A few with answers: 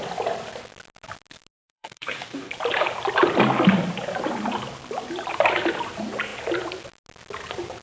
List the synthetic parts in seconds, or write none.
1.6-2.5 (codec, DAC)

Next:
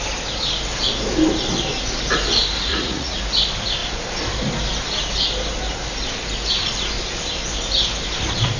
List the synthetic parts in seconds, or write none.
2.7-3.2 (vocoder, Vocos)

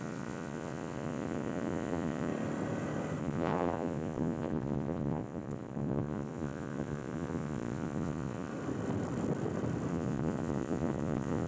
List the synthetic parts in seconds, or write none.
0.0-2.3 (vocoder, Vocos); 3.2-8.5; 9.9-11.5

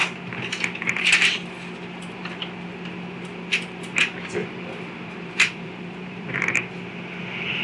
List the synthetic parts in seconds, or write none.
4.4-6.3 (vocoder, BigVGAN v2)

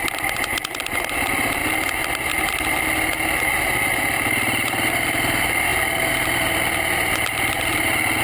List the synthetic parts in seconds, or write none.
none

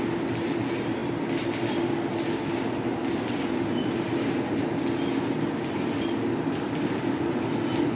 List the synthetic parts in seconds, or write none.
none

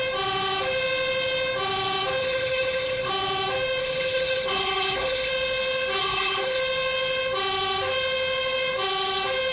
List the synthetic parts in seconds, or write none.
2.2-3.1 (codec, HILCodec); 3.8-5.3; 6.0-6.6

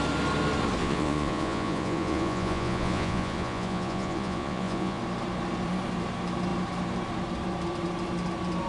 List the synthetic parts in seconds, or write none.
0.8-5.0 (vocoder, Vocos)